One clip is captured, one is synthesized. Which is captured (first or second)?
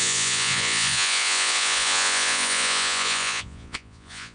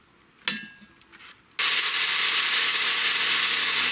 second